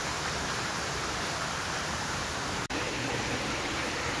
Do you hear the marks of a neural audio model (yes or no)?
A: yes